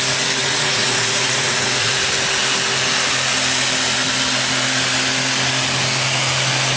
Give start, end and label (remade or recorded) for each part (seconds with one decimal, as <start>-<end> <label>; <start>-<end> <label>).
0.0-0.4 recorded; 0.4-1.9 remade; 1.9-6.8 recorded